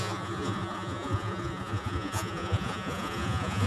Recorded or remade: remade